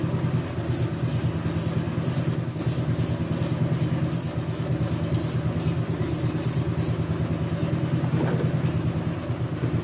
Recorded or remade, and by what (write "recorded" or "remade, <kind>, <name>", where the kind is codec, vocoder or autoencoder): recorded